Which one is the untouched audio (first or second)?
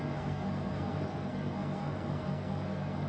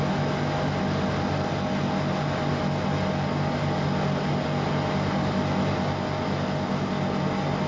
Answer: second